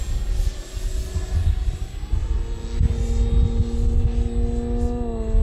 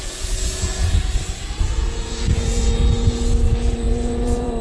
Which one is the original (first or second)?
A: first